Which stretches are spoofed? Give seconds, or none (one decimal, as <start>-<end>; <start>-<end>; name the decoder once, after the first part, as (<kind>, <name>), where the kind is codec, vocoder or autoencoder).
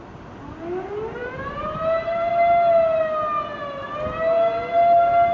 1.2-2.3 (vocoder, BigVGAN v2)